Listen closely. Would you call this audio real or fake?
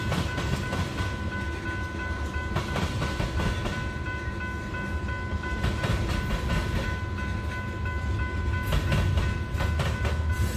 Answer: real